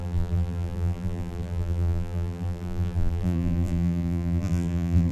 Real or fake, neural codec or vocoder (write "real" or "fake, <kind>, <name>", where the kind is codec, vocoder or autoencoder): fake, vocoder, BigVGAN v2